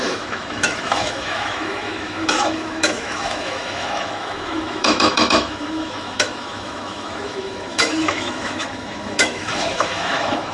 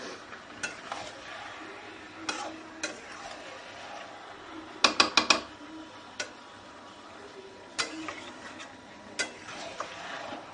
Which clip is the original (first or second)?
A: second